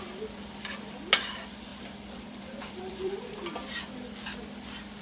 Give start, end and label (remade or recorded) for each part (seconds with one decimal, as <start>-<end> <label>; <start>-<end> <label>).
0.0-1.7 recorded; 1.7-3.8 remade; 3.8-5.0 recorded